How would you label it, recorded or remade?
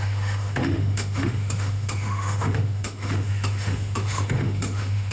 remade